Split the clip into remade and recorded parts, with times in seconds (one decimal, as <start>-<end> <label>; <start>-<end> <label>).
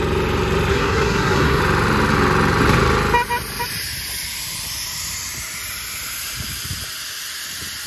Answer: 0.0-0.7 recorded; 0.7-1.6 remade; 1.6-7.9 recorded